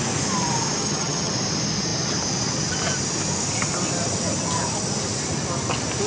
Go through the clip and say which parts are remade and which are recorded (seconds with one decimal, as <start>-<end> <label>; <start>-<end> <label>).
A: 0.0-0.8 recorded; 0.8-1.3 remade; 1.3-6.1 recorded